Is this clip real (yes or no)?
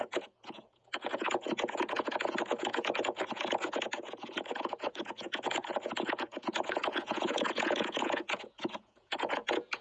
no